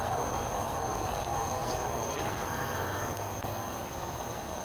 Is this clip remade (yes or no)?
yes